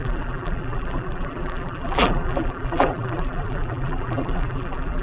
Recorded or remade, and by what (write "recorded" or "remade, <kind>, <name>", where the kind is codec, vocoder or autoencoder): remade, vocoder, BigVGAN v2